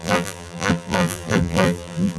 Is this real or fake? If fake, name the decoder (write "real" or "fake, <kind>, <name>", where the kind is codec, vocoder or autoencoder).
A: fake, vocoder, BigVGAN v2